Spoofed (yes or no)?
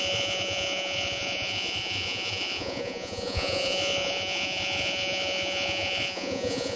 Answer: yes